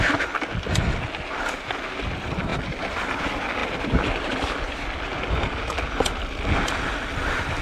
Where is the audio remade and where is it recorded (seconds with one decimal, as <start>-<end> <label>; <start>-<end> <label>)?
0.0-7.6 recorded